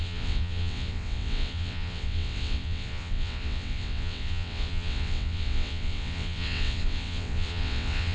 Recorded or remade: remade